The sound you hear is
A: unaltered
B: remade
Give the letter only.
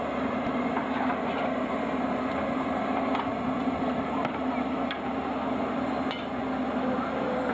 A